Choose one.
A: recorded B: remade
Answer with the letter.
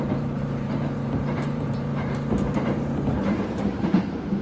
B